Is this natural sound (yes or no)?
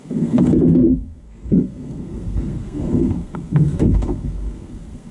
no